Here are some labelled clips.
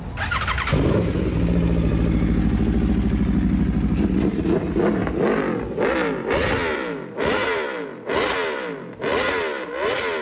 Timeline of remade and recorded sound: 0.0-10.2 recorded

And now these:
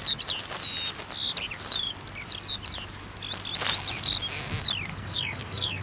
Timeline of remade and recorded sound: 0.0-4.9 recorded; 4.9-5.8 remade

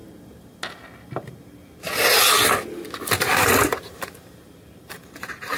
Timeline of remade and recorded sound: 0.0-3.4 recorded; 3.4-5.6 remade

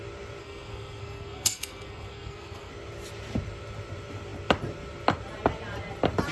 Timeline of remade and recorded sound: 0.0-0.4 recorded; 0.4-2.7 remade; 2.7-6.3 recorded

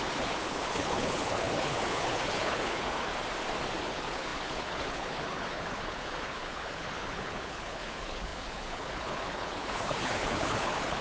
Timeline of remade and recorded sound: 0.0-3.1 remade; 3.1-3.8 recorded; 3.8-11.0 remade

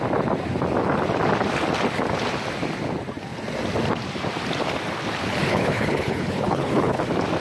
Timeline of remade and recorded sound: 0.0-5.3 recorded; 5.3-7.0 remade; 7.0-7.4 recorded